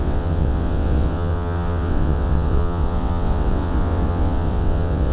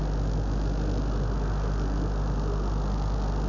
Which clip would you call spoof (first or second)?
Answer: first